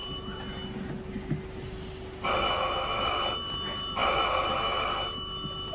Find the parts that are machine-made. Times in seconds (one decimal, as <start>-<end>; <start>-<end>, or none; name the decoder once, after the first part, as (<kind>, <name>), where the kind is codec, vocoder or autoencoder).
none